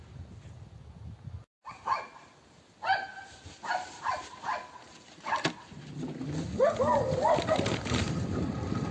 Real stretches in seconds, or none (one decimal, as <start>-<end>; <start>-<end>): none